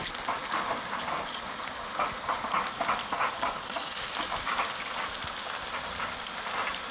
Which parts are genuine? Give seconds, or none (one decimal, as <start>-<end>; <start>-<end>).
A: 0.0-6.9